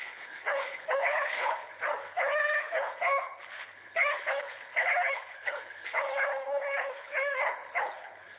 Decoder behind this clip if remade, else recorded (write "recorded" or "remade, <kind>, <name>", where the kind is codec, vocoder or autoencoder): remade, codec, HILCodec